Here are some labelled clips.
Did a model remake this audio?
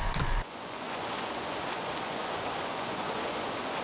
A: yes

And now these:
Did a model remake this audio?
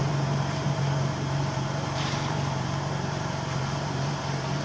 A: yes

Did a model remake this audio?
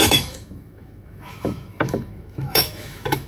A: yes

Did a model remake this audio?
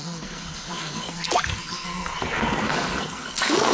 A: yes